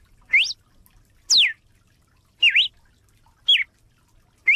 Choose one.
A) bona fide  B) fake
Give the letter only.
A